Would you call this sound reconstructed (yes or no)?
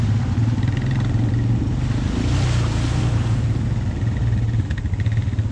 no